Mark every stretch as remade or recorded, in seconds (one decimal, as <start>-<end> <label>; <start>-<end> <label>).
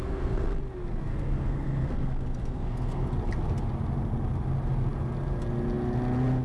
0.0-0.6 remade; 0.6-1.1 recorded; 1.1-3.1 remade; 3.1-6.4 recorded